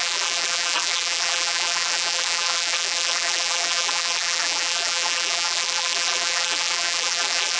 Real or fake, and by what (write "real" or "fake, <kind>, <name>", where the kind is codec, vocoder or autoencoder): fake, vocoder, BigVGAN v2